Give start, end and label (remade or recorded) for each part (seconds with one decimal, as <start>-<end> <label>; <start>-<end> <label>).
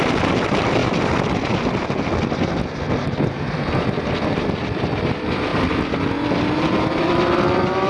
0.0-7.9 remade